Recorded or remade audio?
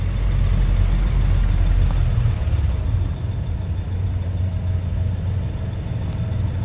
recorded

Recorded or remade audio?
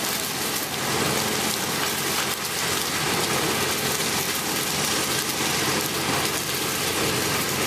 recorded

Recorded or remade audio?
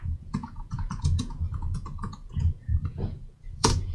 remade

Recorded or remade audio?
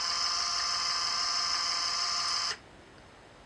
recorded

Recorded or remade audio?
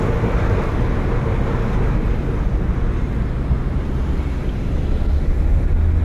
recorded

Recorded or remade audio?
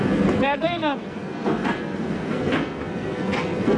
remade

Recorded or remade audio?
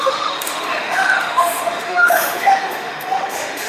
remade